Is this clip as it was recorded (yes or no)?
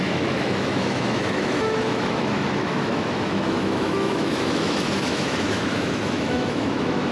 no